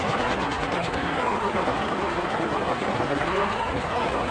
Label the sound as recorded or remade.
remade